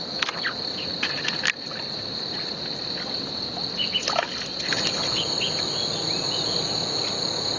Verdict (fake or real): real